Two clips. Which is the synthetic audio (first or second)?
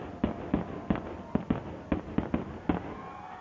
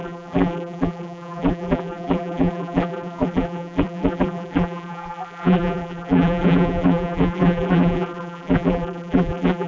second